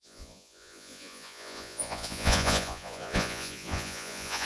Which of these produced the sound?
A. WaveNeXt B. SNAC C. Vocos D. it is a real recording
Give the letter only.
C